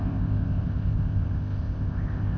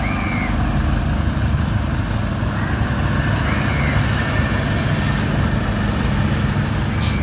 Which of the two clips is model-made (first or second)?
first